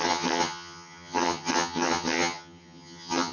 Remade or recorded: remade